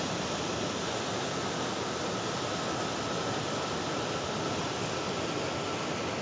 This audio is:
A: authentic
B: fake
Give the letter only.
A